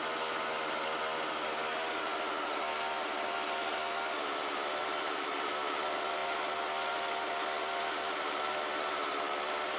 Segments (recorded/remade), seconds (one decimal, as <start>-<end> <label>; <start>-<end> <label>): 0.0-9.8 recorded